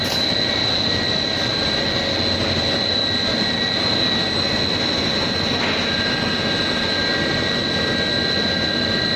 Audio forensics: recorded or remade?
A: recorded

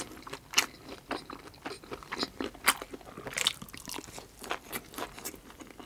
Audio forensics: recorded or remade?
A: recorded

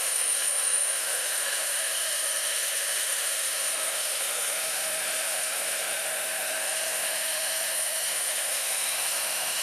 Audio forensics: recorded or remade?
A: remade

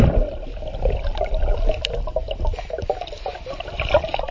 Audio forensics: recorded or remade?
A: recorded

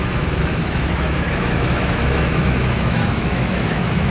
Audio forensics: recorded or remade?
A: remade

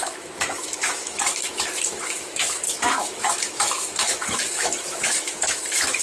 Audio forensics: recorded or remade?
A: remade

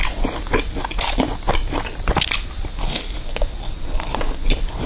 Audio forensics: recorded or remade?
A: recorded